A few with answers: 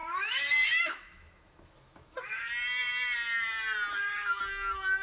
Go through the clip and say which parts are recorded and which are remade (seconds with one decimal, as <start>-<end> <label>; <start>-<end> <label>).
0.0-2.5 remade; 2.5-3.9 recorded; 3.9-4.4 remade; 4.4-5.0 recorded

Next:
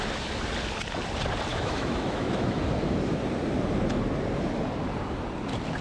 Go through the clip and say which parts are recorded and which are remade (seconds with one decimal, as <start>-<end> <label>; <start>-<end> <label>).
0.0-1.5 recorded; 1.5-2.6 remade; 2.6-5.8 recorded

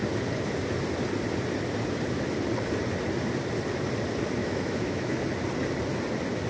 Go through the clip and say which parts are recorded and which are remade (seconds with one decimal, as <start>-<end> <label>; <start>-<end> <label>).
0.0-4.4 recorded; 4.4-5.2 remade; 5.2-6.5 recorded